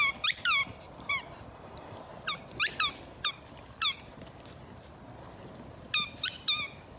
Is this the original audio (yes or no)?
yes